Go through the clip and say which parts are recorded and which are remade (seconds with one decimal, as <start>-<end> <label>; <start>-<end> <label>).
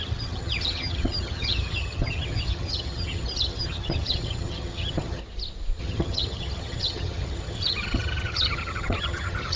0.0-5.2 remade; 5.2-5.8 recorded; 5.8-9.6 remade